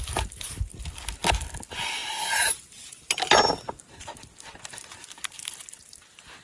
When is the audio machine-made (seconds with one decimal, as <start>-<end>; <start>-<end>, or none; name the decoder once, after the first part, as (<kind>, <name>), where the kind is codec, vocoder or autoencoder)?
none